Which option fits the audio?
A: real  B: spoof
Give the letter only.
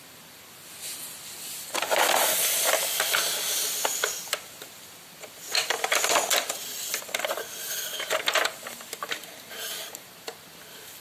A